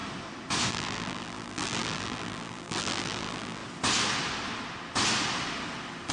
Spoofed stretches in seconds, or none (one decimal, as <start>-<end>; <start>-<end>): 0.7-3.6